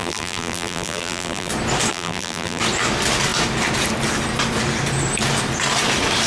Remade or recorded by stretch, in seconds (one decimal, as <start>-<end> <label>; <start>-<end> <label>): 0.0-1.5 remade; 1.5-1.9 recorded; 1.9-2.6 remade; 2.6-6.3 recorded

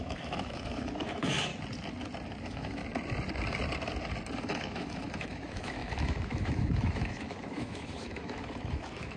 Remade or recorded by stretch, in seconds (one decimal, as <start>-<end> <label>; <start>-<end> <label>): 0.0-1.5 remade; 1.5-2.4 recorded; 2.4-2.8 remade; 2.8-4.4 recorded; 4.4-9.2 remade

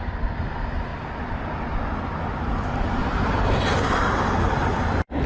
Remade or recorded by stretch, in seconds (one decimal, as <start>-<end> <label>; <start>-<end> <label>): 0.0-0.9 recorded; 0.9-4.1 remade; 4.1-5.3 recorded